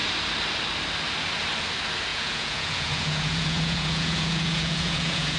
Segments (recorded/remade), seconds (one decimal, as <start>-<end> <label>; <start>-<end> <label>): 0.0-2.1 recorded; 2.1-5.4 remade